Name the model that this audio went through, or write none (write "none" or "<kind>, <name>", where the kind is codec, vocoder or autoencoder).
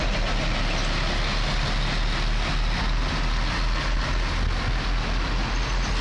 none